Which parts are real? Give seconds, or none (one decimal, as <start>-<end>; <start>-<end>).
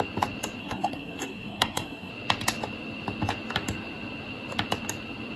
0.0-0.6; 2.1-5.4